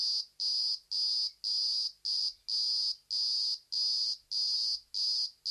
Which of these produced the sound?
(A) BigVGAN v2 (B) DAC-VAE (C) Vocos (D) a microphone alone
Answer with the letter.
D